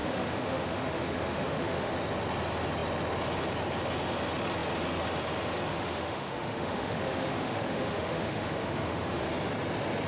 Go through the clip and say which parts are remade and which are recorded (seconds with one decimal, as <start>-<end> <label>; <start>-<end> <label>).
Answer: 0.0-1.9 remade; 1.9-5.7 recorded; 5.7-9.3 remade; 9.3-10.1 recorded